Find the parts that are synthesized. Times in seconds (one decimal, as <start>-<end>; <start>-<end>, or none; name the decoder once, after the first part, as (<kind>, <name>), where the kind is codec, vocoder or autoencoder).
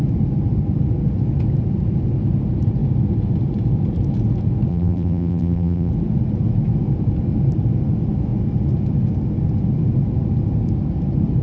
4.7-5.9 (vocoder, BigVGAN v2)